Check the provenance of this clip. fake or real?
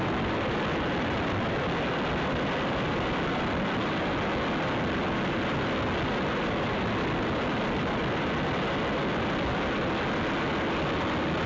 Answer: real